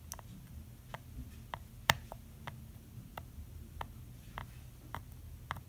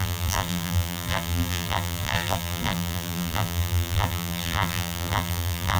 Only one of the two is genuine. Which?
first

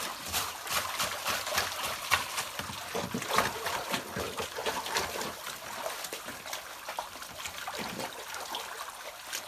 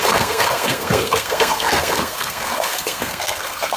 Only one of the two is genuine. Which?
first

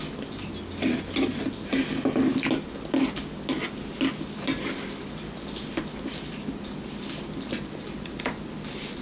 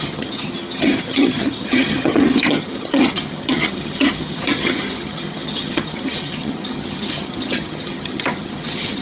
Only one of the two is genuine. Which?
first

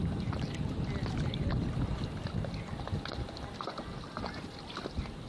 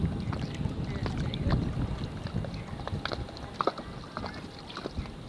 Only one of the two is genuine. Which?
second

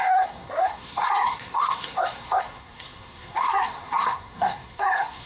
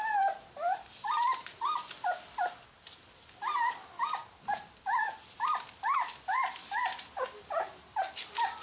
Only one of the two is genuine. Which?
second